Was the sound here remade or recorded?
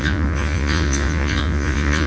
remade